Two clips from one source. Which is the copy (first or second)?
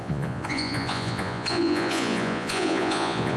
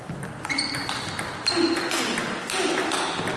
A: first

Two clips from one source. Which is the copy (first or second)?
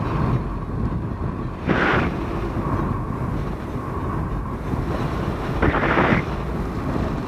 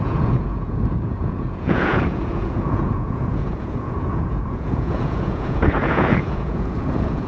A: second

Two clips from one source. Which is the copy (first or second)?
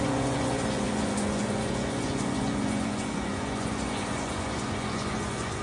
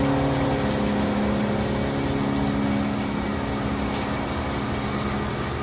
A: first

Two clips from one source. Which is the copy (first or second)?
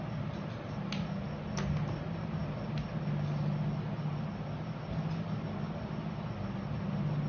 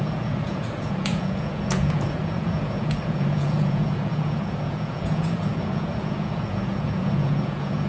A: second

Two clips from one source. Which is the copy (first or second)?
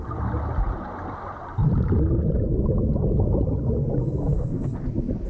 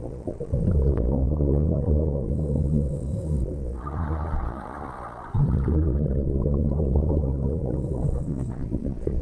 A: second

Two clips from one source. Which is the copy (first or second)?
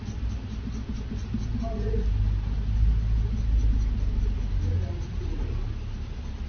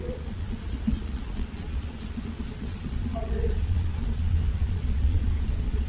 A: second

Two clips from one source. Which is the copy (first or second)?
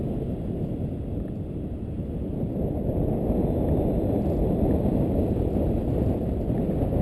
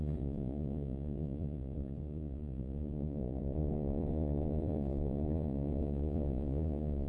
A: second